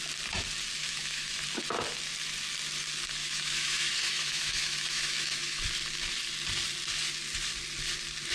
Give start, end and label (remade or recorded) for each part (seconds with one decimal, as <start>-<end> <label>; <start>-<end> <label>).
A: 0.0-0.8 recorded; 0.8-1.4 remade; 1.4-3.2 recorded; 3.2-5.6 remade; 5.6-8.3 recorded